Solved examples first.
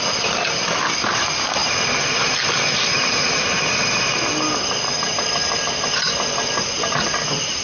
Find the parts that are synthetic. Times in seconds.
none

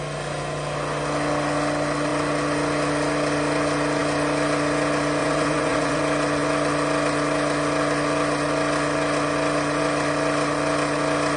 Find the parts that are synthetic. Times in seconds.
5.2-6.0 (vocoder, Vocos)

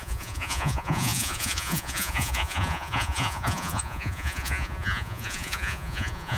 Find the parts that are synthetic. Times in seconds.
0.0-6.4 (vocoder, Vocos)

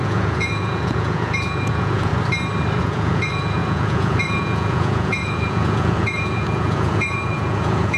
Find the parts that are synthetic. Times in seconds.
0.0-2.1 (vocoder, Vocos); 2.8-8.0

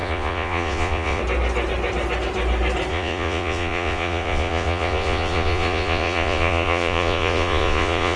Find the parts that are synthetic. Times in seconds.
0.0-1.2 (vocoder, Vocos); 2.9-8.2

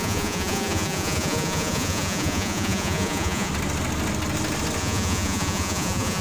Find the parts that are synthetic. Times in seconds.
0.0-3.5 (vocoder, Vocos); 4.8-6.2

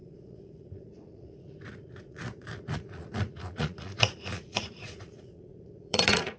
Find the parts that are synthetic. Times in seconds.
0.0-6.4 (vocoder, Vocos)

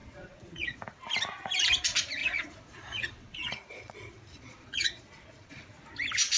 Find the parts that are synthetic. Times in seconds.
0.0-0.8 (vocoder, Vocos); 2.2-5.6